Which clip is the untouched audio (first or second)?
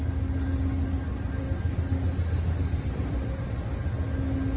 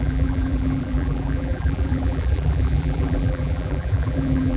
first